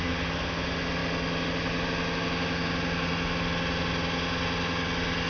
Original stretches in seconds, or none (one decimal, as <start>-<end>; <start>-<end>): 0.0-5.3